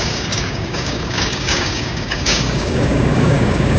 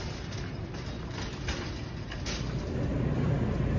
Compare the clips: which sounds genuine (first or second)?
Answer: second